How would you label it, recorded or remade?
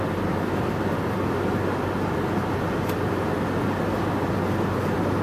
recorded